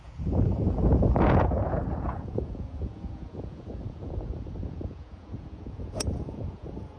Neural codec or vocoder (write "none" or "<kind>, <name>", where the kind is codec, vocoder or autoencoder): vocoder, Vocos